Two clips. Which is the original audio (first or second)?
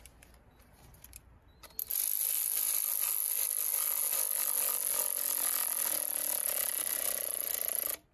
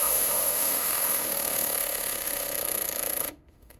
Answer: first